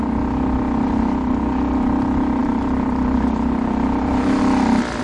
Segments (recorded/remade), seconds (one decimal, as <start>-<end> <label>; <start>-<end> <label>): 0.0-2.4 recorded; 2.4-4.4 remade; 4.4-5.0 recorded